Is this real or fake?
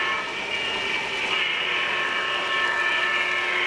real